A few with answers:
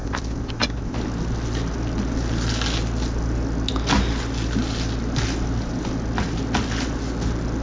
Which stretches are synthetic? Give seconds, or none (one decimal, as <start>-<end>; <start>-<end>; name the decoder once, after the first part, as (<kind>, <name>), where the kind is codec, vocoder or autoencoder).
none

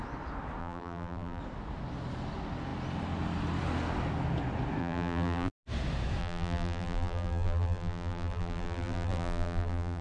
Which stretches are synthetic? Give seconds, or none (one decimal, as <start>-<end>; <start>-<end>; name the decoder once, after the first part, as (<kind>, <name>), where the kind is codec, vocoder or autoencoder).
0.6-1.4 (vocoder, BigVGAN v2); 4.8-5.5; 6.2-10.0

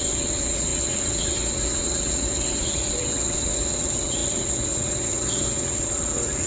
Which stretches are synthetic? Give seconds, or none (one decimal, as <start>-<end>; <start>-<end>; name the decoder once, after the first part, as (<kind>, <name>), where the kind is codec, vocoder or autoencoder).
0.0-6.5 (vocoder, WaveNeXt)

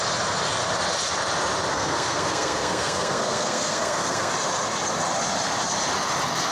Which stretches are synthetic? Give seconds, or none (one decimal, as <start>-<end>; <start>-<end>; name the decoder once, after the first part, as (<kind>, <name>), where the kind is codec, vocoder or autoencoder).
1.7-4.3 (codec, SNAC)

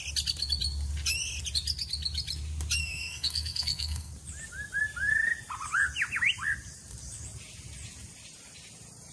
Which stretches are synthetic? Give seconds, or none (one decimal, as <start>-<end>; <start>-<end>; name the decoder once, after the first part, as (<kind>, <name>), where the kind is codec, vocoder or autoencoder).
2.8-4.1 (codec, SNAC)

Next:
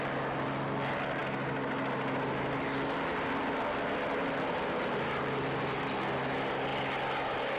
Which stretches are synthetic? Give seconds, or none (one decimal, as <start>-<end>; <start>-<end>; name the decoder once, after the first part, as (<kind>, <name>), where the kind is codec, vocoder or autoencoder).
none